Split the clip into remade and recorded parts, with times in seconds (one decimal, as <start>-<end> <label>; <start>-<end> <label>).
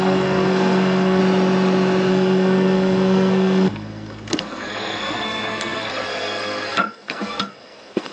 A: 0.0-1.2 remade; 1.2-2.1 recorded; 2.1-8.1 remade